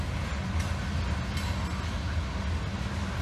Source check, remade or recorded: recorded